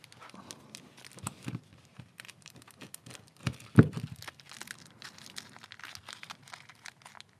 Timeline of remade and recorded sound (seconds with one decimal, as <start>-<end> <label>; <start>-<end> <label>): 0.0-1.7 recorded; 1.7-2.7 remade; 2.7-7.4 recorded